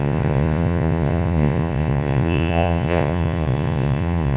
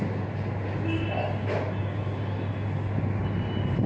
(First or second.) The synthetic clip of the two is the first